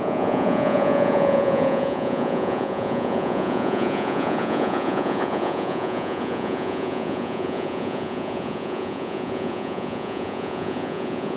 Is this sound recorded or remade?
remade